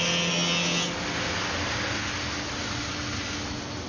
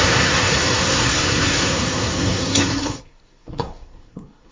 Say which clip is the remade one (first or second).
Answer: second